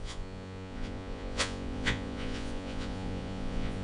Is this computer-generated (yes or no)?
yes